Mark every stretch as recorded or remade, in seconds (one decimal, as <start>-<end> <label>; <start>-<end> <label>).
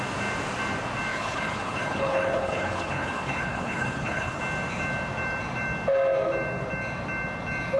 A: 0.0-1.1 recorded; 1.1-4.4 remade; 4.4-7.8 recorded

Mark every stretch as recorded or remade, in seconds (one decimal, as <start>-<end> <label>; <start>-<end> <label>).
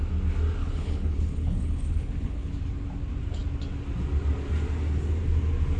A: 0.0-0.6 recorded; 0.6-2.5 remade; 2.5-5.8 recorded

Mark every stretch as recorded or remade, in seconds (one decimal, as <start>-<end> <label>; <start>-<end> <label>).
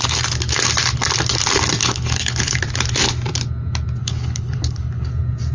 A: 0.0-1.8 recorded; 1.8-2.6 remade; 2.6-4.0 recorded; 4.0-5.1 remade; 5.1-5.5 recorded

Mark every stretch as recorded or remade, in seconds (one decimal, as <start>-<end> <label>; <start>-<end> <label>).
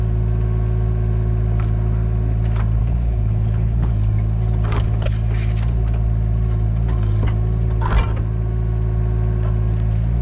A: 0.0-2.8 recorded; 2.8-3.9 remade; 3.9-10.2 recorded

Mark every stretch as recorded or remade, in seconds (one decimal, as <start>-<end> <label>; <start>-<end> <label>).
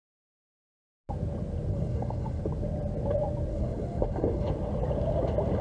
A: 0.0-1.7 recorded; 1.7-2.4 remade; 2.4-3.5 recorded; 3.5-4.5 remade; 4.5-5.6 recorded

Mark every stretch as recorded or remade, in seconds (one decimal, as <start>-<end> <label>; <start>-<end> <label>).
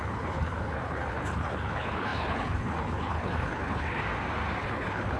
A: 0.0-4.0 remade; 4.0-4.6 recorded; 4.6-5.2 remade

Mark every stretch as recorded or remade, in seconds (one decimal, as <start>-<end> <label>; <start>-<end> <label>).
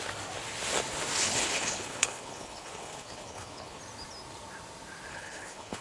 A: 0.0-1.2 recorded; 1.2-3.8 remade; 3.8-5.1 recorded; 5.1-5.8 remade